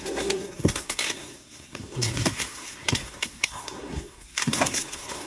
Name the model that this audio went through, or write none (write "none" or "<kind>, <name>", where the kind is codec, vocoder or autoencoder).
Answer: codec, SNAC